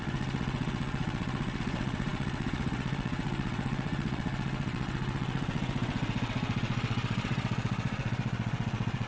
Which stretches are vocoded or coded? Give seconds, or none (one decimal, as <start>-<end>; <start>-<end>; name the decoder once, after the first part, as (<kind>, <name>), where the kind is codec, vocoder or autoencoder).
0.0-9.1 (vocoder, WaveNeXt)